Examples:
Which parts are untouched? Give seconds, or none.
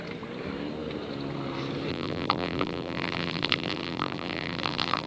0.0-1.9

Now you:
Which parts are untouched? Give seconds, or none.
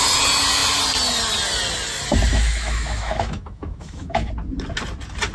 0.0-2.3; 4.3-5.3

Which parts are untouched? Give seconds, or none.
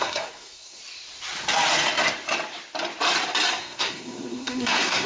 0.8-3.6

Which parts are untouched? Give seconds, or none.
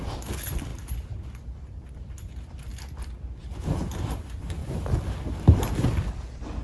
2.7-4.0